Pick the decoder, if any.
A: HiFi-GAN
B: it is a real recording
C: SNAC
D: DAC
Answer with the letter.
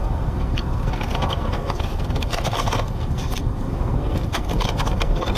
C